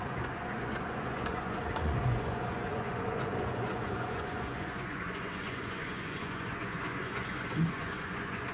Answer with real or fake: fake